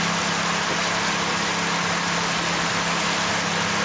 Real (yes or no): yes